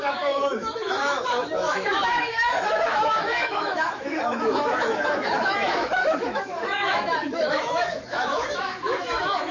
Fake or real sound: fake